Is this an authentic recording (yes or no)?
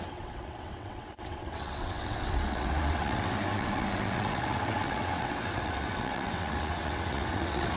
no